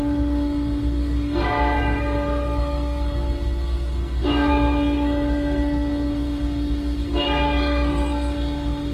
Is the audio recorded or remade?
remade